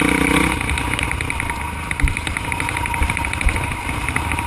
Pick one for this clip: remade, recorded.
recorded